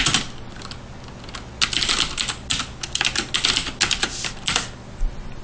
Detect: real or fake real